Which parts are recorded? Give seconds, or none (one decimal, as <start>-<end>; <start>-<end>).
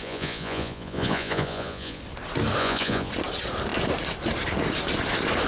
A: 2.0-2.6; 3.1-5.5